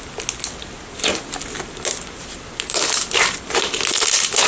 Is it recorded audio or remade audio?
recorded